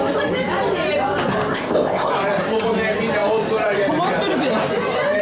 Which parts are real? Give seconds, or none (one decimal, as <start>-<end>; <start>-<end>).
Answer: 0.0-1.5; 2.1-5.2

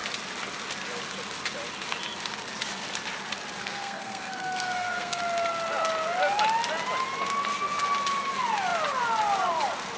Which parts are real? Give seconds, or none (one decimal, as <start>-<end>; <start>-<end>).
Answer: 0.0-3.6; 5.2-10.0

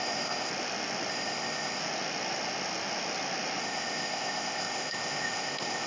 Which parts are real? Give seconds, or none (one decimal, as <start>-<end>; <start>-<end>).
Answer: 0.5-1.1; 1.8-3.6